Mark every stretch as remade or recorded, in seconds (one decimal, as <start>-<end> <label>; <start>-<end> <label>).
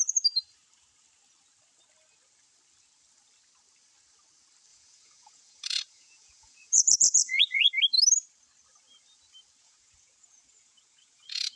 0.0-4.7 recorded; 4.7-7.7 remade; 7.7-9.6 recorded; 9.6-11.6 remade